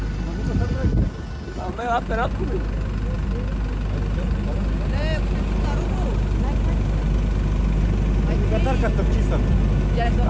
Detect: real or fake real